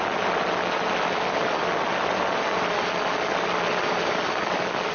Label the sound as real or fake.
real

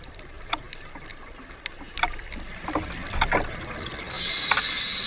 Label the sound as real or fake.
real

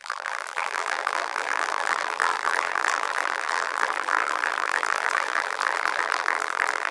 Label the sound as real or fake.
fake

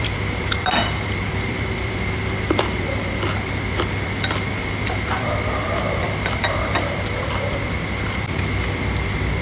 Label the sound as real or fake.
fake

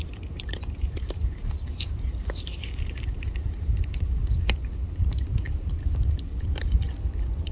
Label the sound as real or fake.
fake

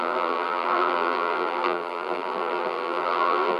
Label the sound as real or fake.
fake